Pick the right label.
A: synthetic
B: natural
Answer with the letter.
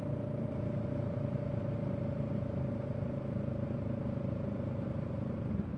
B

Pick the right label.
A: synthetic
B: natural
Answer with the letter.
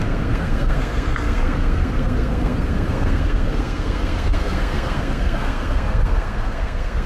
A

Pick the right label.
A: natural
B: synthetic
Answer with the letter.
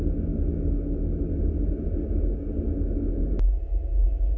A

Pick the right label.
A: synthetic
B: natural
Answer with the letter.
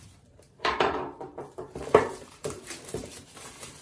A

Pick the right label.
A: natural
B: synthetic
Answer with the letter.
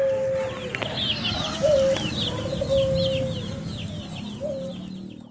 A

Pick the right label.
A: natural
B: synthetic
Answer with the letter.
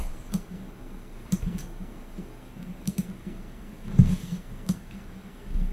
B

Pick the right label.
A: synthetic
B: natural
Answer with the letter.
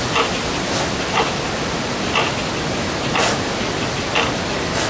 B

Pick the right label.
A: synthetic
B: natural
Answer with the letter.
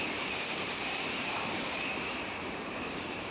A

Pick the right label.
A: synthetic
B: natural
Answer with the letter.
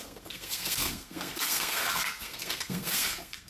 A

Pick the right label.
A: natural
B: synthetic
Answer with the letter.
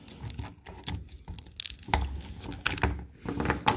A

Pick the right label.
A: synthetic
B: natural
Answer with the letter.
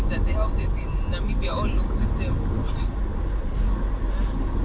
B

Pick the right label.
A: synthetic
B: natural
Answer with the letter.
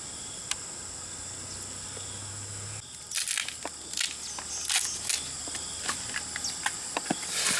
B